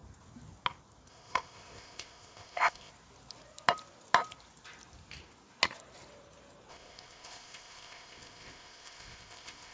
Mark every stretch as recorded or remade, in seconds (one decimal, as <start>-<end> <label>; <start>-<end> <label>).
0.0-1.1 recorded; 1.1-2.9 remade; 2.9-6.7 recorded; 6.7-9.7 remade